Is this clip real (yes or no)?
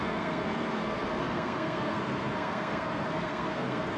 no